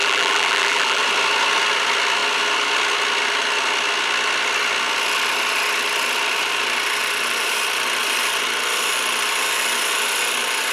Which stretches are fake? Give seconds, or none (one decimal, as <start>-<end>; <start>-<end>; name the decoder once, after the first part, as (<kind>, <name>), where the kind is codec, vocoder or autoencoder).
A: 0.0-1.0 (vocoder, BigVGAN v2)